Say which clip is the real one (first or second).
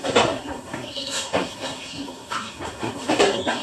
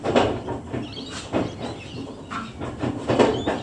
second